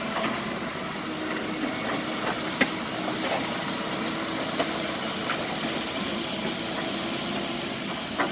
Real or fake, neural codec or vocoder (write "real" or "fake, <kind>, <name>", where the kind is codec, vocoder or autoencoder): real